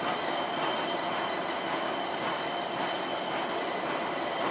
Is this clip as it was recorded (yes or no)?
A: yes